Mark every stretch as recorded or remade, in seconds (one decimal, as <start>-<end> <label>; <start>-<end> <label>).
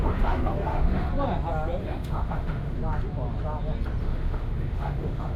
0.0-1.1 remade; 1.1-1.8 recorded; 1.8-2.8 remade; 2.8-4.0 recorded; 4.0-5.4 remade